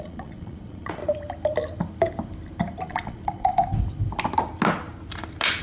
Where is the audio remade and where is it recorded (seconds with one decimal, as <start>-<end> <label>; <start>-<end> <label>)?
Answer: 0.0-1.0 remade; 1.0-2.8 recorded; 2.8-3.6 remade; 3.6-5.6 recorded

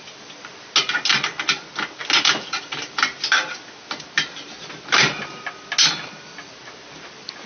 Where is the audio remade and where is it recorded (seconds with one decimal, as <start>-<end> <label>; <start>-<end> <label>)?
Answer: 0.0-7.5 recorded

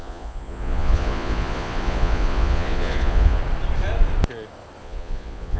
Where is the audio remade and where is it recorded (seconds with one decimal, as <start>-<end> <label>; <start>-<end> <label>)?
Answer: 0.0-3.4 remade; 3.4-4.8 recorded; 4.8-5.6 remade

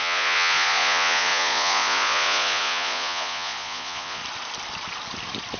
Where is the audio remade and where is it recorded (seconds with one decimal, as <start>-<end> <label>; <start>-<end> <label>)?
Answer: 0.0-4.2 remade; 4.2-5.6 recorded